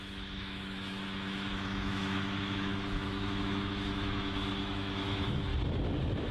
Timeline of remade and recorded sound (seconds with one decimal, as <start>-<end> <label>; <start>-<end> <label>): 0.0-5.5 remade; 5.5-6.3 recorded